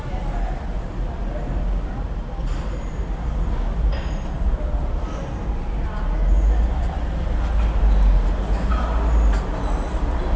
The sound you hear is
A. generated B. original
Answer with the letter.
B